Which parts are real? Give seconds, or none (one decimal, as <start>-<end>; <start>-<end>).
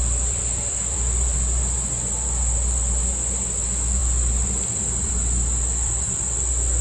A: 1.6-4.0; 6.0-6.8